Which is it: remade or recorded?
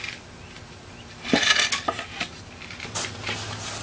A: recorded